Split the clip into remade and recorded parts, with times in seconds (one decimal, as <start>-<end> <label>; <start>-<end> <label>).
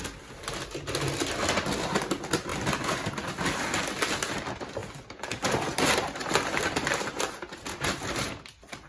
0.0-8.9 recorded